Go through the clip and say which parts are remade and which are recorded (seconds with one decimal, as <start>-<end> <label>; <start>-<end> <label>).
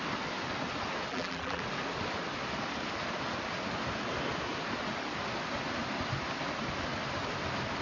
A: 0.0-1.1 recorded; 1.1-1.6 remade; 1.6-7.8 recorded